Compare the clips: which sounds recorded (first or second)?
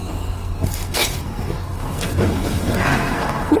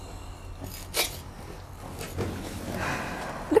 second